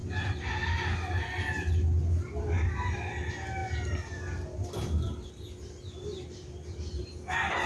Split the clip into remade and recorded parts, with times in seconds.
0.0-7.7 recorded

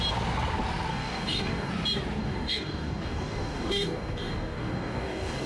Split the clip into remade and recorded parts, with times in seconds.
0.0-0.9 recorded; 0.9-1.7 remade; 1.7-2.2 recorded; 2.2-5.5 remade